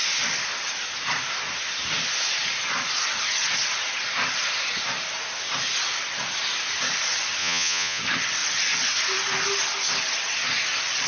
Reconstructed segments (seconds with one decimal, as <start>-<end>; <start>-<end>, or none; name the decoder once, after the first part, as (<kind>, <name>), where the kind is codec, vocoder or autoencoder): 7.4-8.0 (vocoder, Vocos)